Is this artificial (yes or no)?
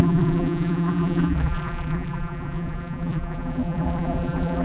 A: yes